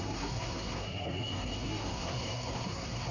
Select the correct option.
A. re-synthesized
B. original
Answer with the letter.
A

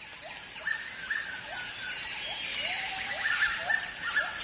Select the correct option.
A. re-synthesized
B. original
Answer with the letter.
B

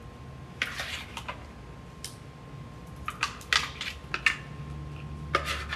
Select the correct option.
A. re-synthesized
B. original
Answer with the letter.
B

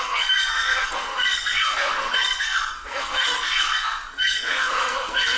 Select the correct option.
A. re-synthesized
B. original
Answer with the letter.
A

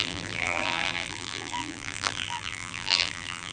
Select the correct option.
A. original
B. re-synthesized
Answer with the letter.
B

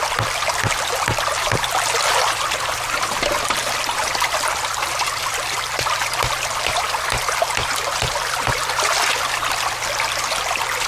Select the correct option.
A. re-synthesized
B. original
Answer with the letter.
B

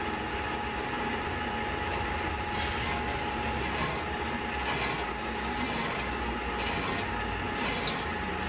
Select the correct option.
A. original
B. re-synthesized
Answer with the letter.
A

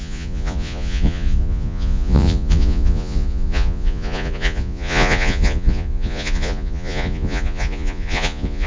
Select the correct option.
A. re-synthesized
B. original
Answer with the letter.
A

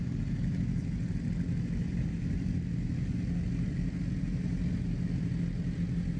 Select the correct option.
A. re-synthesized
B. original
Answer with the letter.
B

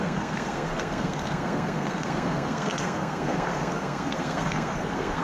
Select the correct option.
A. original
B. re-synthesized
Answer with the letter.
B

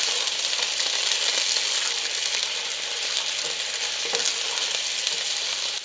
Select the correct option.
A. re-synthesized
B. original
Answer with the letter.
B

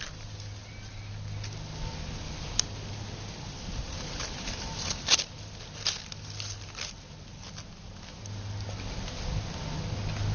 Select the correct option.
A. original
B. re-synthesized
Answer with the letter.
A